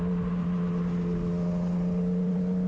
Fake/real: real